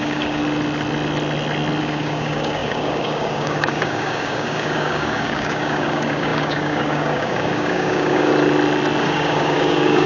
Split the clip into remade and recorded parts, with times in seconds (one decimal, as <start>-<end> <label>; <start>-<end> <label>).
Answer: 0.0-0.4 remade; 0.4-1.8 recorded; 1.8-8.3 remade; 8.3-9.0 recorded; 9.0-10.1 remade

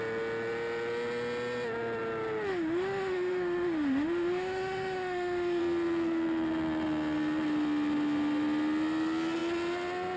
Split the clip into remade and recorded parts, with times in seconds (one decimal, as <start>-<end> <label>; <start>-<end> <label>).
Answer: 0.0-2.5 recorded; 2.5-5.6 remade; 5.6-10.2 recorded

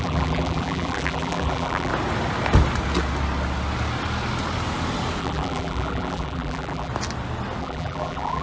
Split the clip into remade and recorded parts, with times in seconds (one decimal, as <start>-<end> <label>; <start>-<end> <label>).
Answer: 0.0-1.9 remade; 1.9-5.2 recorded; 5.2-6.9 remade; 6.9-7.6 recorded; 7.6-8.4 remade

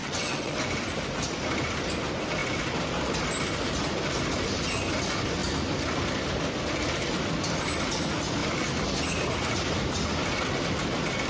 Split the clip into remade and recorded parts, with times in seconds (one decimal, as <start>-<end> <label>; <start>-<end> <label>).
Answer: 0.0-0.6 remade; 0.6-11.3 recorded